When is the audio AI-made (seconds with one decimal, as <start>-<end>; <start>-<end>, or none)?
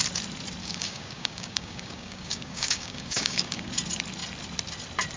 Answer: 0.6-3.7